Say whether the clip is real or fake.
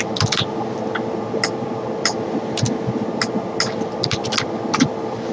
real